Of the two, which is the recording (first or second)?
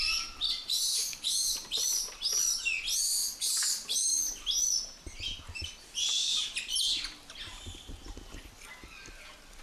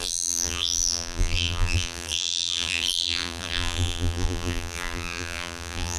first